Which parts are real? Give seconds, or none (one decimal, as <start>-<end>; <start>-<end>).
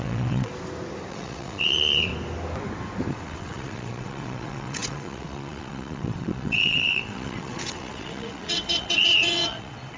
0.5-1.1; 2.1-3.1